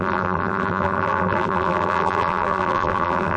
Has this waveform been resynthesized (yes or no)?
yes